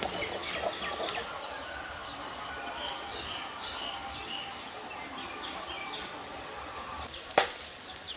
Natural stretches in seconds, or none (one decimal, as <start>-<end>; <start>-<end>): 0.0-8.2